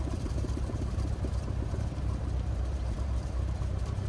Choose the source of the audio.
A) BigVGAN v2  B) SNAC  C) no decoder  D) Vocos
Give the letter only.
A